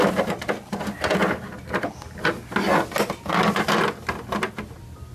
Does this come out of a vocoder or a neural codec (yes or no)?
no